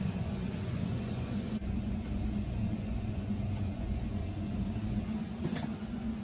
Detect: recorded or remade remade